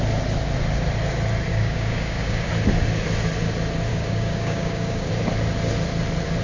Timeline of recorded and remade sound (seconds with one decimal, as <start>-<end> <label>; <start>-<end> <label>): 0.0-1.5 recorded; 1.5-2.5 remade; 2.5-3.9 recorded; 3.9-5.1 remade; 5.1-6.4 recorded